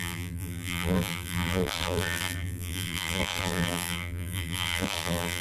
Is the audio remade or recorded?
remade